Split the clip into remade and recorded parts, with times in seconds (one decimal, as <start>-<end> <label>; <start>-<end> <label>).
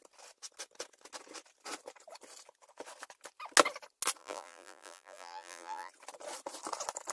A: 0.0-4.2 recorded; 4.2-5.9 remade; 5.9-7.1 recorded